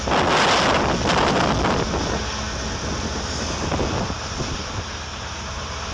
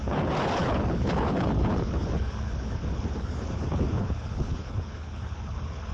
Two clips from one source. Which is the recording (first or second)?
first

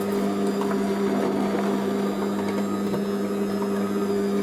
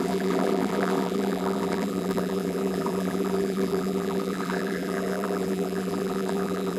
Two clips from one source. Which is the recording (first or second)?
first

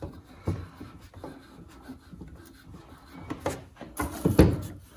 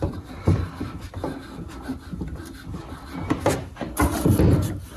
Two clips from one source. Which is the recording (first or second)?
first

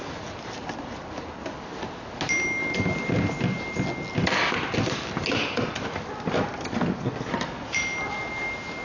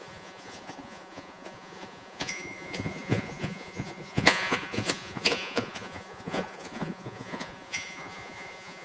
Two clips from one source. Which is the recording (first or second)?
first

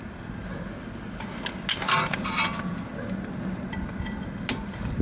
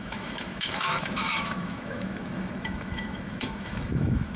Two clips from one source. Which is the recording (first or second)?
first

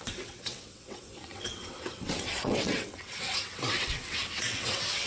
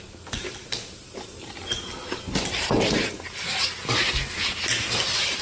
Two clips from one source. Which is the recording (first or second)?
second